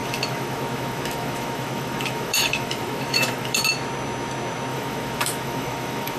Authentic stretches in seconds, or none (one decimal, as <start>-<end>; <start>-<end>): 3.7-4.7